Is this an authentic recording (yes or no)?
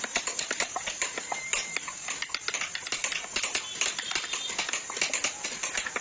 yes